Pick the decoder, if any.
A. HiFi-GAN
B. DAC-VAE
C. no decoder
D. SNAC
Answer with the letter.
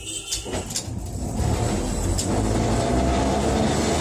C